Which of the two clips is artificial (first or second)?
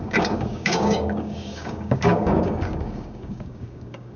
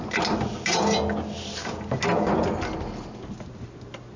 first